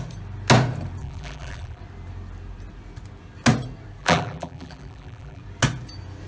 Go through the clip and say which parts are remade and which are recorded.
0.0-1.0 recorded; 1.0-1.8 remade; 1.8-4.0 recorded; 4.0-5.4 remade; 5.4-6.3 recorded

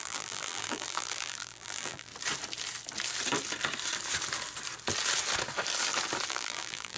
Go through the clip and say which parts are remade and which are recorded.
0.0-2.1 remade; 2.1-6.3 recorded; 6.3-7.0 remade

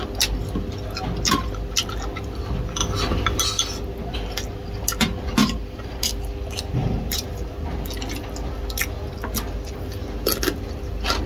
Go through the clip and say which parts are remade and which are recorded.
0.0-5.4 recorded; 5.4-6.1 remade; 6.1-6.8 recorded; 6.8-7.5 remade; 7.5-11.3 recorded

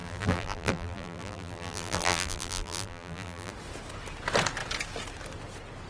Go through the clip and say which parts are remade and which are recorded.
0.0-3.5 remade; 3.5-5.9 recorded